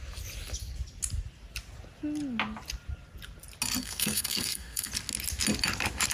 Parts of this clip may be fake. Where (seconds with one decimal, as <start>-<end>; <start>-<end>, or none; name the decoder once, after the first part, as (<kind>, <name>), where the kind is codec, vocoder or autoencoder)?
3.8-4.9 (codec, SNAC)